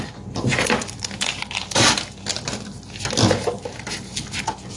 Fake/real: real